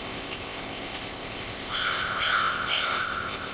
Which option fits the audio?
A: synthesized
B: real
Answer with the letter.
A